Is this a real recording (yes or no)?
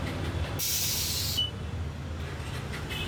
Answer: yes